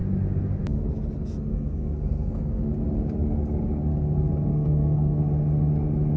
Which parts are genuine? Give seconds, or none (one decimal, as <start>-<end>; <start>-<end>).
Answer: 0.0-1.5; 2.7-4.5; 5.2-6.2